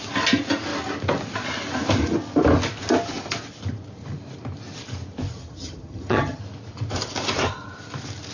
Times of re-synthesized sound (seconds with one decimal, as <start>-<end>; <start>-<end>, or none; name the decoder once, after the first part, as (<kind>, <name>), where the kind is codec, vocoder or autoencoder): 5.3-6.4 (vocoder, HiFi-GAN)